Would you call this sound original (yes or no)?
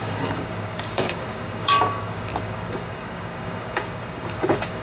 no